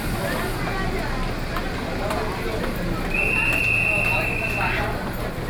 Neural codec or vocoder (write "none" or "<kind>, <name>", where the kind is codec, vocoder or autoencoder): none